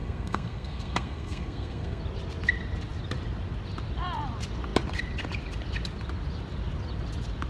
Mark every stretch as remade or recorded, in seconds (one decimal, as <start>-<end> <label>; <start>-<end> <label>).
0.0-2.0 remade; 2.0-7.5 recorded